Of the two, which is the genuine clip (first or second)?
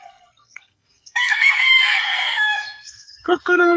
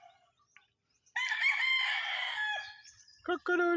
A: second